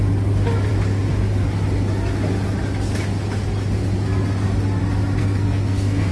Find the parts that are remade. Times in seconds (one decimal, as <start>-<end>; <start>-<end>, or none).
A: 5.2-6.1